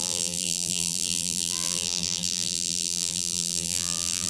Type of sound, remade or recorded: remade